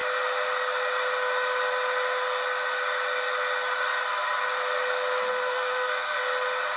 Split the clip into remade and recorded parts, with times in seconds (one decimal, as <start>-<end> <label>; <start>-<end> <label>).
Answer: 0.0-5.3 recorded; 5.3-6.2 remade; 6.2-6.8 recorded